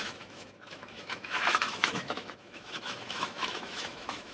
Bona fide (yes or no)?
no